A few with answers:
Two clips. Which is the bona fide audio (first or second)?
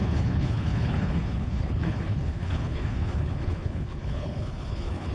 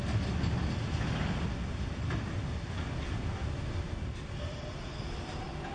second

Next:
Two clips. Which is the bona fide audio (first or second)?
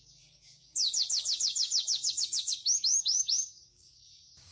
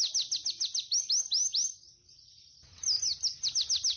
second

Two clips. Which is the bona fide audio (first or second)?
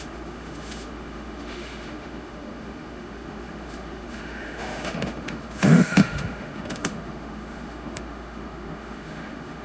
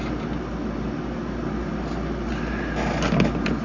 second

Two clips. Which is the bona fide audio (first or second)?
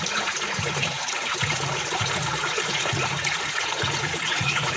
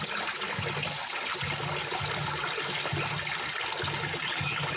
second